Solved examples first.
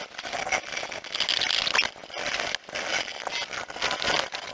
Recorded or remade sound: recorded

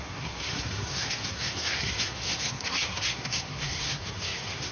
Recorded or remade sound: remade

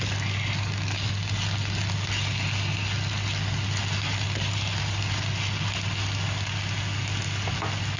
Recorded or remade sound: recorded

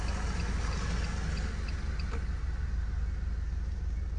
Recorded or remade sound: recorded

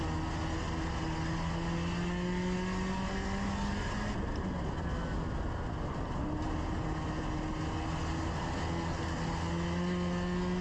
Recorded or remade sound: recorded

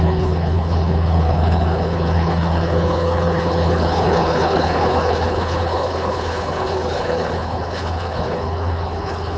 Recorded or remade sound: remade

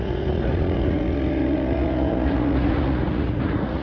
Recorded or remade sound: remade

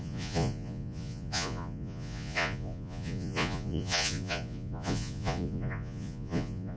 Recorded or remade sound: remade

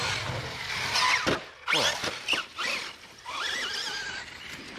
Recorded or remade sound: recorded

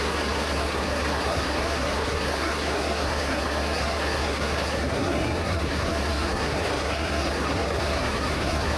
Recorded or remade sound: remade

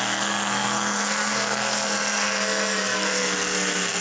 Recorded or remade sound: remade